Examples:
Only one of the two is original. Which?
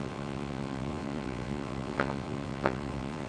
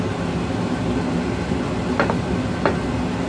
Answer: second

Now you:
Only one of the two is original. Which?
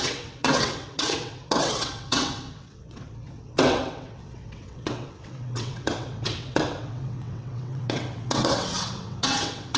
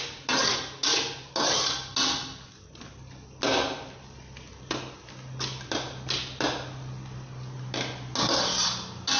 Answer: second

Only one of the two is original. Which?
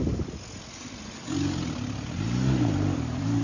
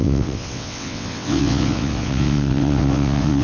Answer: first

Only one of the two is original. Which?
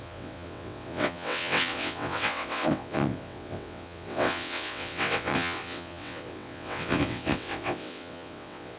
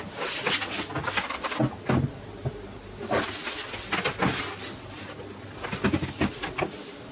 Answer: second